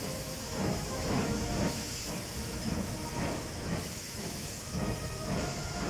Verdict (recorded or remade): remade